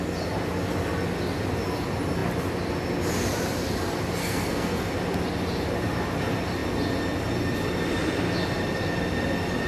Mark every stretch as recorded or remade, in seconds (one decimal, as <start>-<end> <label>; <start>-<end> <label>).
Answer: 0.0-4.2 recorded; 4.2-4.9 remade; 4.9-9.7 recorded